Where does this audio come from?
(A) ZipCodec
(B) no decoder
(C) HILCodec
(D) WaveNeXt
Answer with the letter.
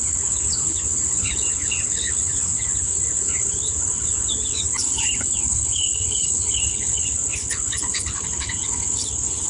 C